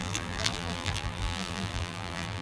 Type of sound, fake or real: fake